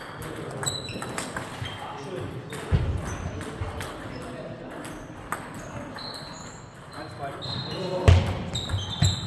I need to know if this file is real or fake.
real